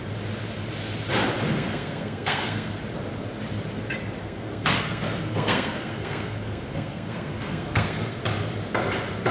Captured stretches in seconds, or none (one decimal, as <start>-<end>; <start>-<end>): 0.0-1.5; 2.8-4.2; 8.2-9.3